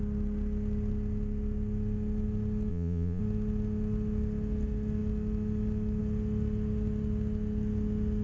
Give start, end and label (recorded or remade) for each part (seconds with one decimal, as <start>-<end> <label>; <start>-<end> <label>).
0.0-2.7 recorded; 2.7-3.2 remade; 3.2-8.2 recorded